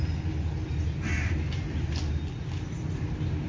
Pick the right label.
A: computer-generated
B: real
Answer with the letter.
B